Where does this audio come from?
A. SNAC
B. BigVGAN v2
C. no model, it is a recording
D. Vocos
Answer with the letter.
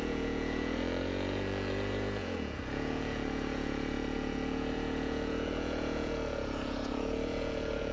D